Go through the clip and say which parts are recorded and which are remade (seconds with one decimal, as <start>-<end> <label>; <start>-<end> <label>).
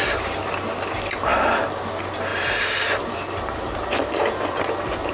0.0-2.3 recorded; 2.3-5.1 remade